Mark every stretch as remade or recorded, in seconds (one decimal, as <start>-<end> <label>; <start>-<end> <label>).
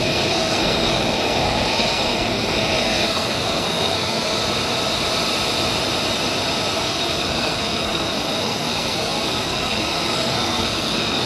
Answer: 0.0-4.4 remade; 4.4-6.8 recorded; 6.8-11.3 remade